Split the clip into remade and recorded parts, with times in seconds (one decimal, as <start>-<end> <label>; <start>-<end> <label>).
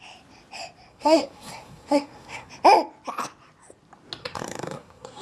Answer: 0.0-0.9 recorded; 0.9-2.5 remade; 2.5-4.2 recorded; 4.2-5.2 remade